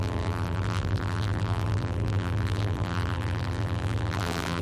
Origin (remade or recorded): remade